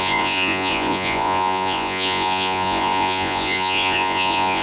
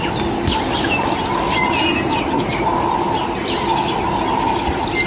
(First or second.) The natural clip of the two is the second